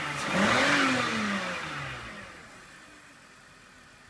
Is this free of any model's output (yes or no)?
yes